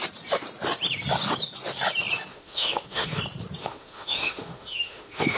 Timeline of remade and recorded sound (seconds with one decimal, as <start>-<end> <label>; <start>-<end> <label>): 0.0-2.3 recorded; 2.3-3.2 remade; 3.2-3.6 recorded; 3.6-5.4 remade